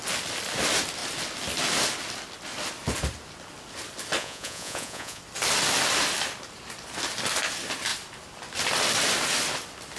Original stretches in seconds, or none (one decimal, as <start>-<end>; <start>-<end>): 0.0-4.2; 5.2-10.0